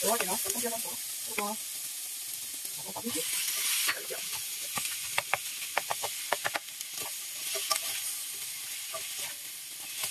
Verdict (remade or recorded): recorded